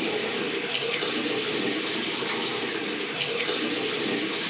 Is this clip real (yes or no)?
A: yes